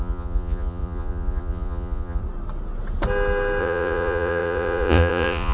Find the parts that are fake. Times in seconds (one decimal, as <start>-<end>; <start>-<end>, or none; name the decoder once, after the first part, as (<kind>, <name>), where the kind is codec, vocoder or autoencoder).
0.0-2.2 (vocoder, Vocos); 3.6-5.5